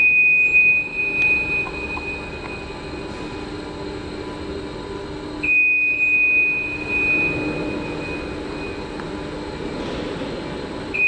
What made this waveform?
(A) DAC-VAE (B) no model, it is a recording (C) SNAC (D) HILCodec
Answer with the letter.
B